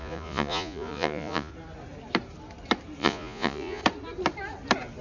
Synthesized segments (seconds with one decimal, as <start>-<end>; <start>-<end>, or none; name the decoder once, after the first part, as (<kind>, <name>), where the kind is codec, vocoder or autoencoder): 0.0-1.5 (vocoder, Vocos); 3.0-3.8